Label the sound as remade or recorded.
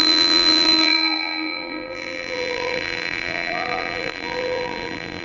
remade